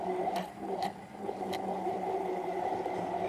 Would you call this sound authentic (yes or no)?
no